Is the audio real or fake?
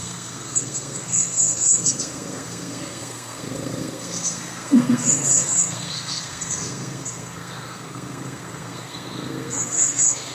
fake